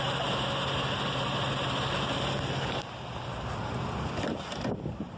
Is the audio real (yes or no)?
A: yes